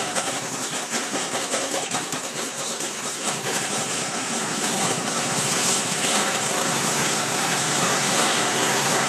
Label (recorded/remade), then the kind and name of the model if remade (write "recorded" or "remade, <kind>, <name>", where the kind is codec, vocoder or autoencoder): remade, codec, SNAC